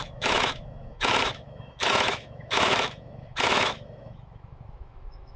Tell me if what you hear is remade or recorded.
remade